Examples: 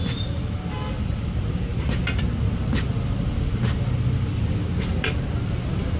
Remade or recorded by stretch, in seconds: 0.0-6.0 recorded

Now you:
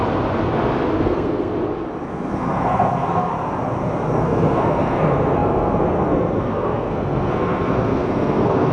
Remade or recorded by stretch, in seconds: 0.0-1.0 recorded; 1.0-1.5 remade; 1.5-2.1 recorded; 2.1-3.3 remade; 3.3-4.1 recorded; 4.1-8.7 remade